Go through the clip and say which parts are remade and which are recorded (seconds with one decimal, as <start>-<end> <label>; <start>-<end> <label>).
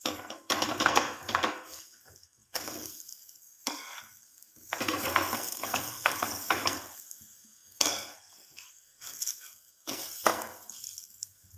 0.0-11.6 remade